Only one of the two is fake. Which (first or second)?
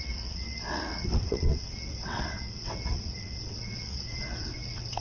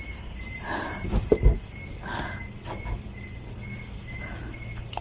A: first